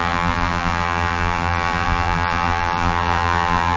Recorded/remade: remade